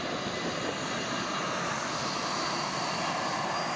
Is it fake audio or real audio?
real